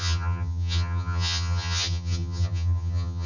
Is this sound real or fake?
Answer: fake